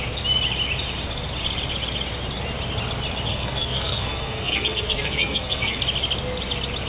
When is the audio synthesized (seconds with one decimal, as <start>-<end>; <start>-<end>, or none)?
3.3-5.8